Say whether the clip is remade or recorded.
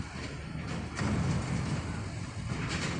recorded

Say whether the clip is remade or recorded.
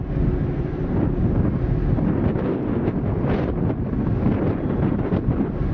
remade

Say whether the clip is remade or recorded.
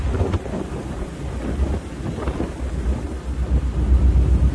recorded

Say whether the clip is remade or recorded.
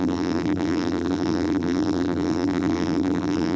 remade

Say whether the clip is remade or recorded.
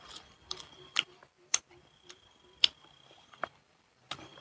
remade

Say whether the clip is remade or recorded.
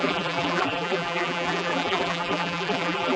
remade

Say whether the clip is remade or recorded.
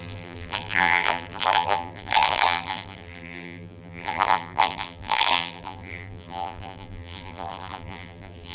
remade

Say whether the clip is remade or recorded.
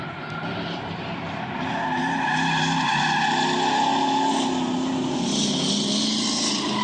recorded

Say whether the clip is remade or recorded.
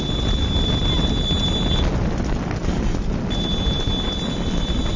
recorded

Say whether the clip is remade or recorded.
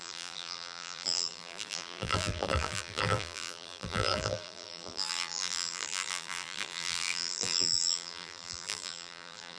remade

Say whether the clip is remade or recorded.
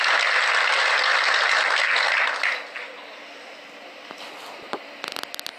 recorded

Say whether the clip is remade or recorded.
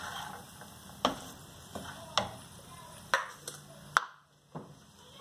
recorded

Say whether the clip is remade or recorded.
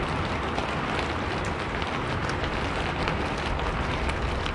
remade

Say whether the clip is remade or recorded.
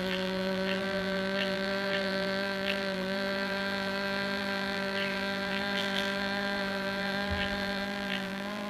remade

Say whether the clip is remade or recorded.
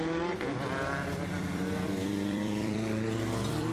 remade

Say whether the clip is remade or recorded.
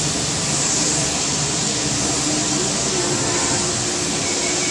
recorded